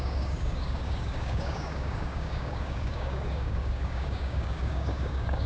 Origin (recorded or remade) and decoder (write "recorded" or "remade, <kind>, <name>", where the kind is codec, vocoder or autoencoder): remade, codec, DAC